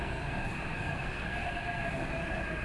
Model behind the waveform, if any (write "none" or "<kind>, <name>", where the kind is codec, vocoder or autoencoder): codec, SNAC